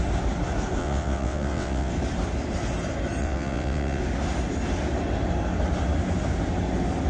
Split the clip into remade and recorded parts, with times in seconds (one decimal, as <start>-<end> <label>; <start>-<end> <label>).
0.0-0.8 recorded; 0.8-1.9 remade; 1.9-3.2 recorded; 3.2-4.0 remade; 4.0-7.1 recorded